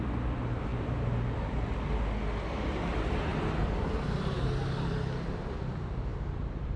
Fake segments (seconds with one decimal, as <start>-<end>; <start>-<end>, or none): 3.3-4.4; 6.1-6.8